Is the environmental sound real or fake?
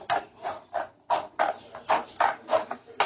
real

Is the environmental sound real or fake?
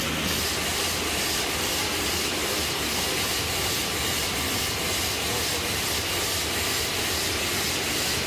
real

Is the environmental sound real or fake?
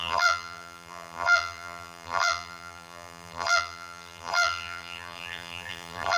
fake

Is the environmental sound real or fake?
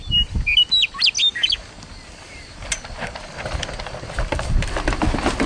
real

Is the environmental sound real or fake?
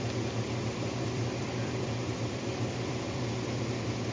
fake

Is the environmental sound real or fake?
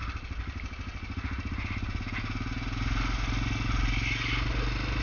real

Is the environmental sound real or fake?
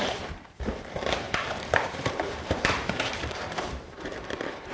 fake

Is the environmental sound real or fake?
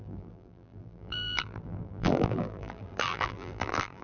fake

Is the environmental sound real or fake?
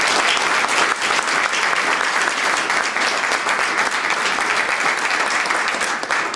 real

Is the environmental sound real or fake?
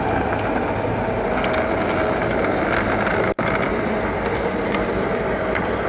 real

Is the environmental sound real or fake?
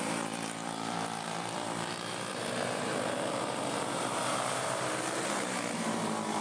fake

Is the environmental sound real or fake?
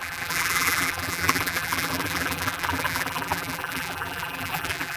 fake